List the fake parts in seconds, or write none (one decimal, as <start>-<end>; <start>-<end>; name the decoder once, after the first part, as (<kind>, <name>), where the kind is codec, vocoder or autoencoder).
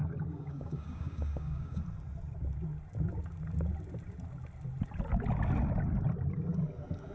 0.0-1.8 (codec, DAC)